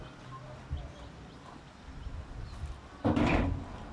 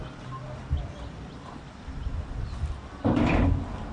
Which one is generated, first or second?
second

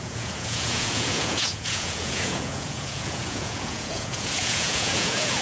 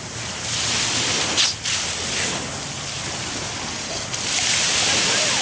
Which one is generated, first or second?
first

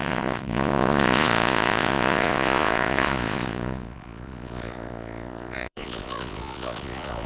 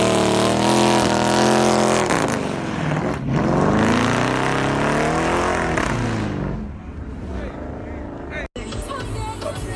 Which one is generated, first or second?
first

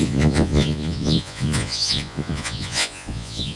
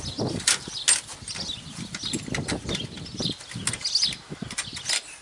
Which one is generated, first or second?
first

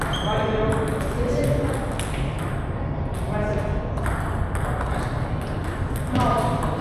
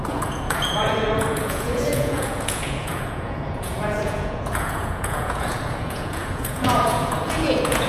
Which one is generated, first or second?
second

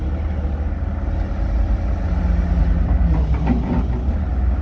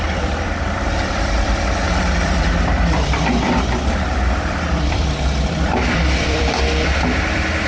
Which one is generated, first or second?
second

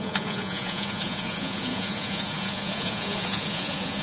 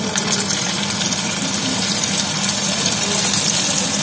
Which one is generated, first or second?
first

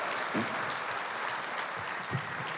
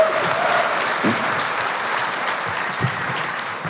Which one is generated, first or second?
second